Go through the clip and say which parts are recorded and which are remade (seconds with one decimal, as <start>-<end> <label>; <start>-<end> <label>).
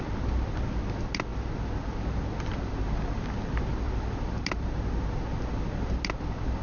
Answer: 0.0-6.6 recorded